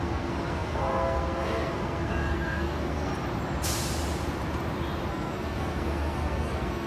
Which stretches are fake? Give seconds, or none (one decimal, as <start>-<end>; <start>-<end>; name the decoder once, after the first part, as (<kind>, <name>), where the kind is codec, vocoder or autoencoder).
0.0-3.1 (codec, SNAC); 5.1-6.9